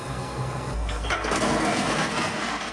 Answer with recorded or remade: remade